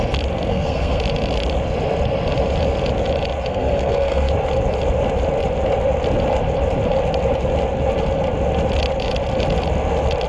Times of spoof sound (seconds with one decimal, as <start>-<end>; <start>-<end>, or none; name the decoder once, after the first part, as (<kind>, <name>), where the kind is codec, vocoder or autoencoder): 0.5-1.0 (codec, SNAC); 3.5-4.3